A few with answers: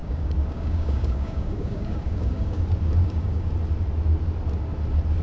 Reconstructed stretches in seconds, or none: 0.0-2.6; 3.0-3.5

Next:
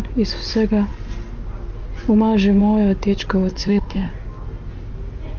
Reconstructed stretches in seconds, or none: 3.5-4.1

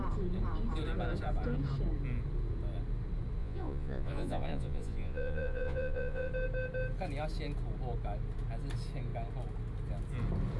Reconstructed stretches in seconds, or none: 3.4-6.3